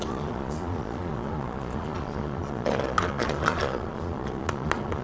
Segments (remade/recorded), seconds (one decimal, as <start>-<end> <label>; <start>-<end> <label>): 0.0-5.0 remade

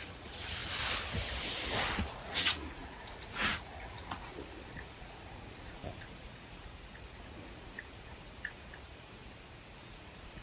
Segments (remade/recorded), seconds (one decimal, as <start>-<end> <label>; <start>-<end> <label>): 0.0-0.6 remade; 0.6-2.0 recorded; 2.0-9.2 remade; 9.2-9.8 recorded; 9.8-10.4 remade

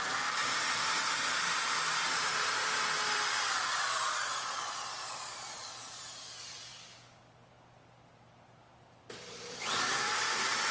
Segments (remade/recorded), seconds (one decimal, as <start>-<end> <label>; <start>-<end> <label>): 0.0-3.7 recorded; 3.7-6.0 remade; 6.0-10.7 recorded

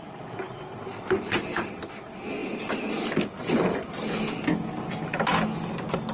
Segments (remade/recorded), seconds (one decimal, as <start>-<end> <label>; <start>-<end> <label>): 0.0-6.1 recorded

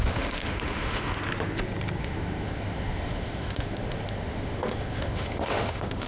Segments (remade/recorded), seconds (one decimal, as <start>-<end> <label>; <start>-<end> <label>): 0.0-1.1 remade; 1.1-2.0 recorded; 2.0-6.1 remade